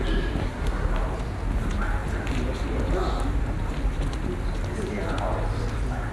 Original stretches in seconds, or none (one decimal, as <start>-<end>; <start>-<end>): 0.0-0.4; 0.9-6.1